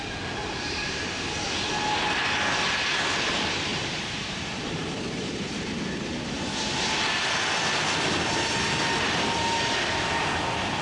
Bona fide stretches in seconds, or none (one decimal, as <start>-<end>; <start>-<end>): 0.0-0.4; 1.0-3.7; 7.0-10.8